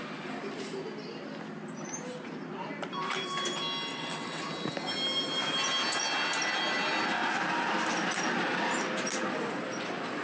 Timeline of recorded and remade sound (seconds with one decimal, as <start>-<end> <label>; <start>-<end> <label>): 0.0-3.9 recorded; 3.9-4.4 remade; 4.4-10.2 recorded